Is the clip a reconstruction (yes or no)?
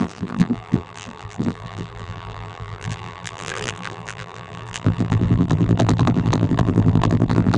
yes